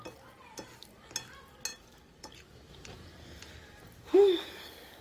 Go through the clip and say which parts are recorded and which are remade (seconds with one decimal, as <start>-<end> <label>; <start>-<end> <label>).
0.0-1.7 recorded; 1.7-2.7 remade; 2.7-3.1 recorded; 3.1-5.0 remade